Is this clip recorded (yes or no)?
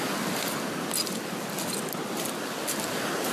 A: yes